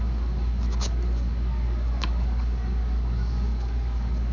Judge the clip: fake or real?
fake